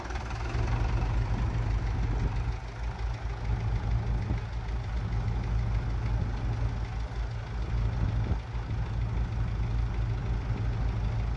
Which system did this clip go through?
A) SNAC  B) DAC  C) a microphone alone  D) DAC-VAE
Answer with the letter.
C